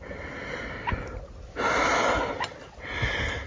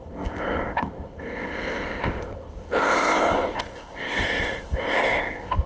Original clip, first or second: first